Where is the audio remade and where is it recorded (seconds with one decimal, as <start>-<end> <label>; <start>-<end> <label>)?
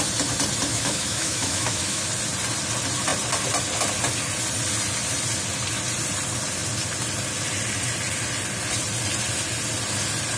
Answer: 0.0-0.7 recorded; 0.7-2.0 remade; 2.0-10.4 recorded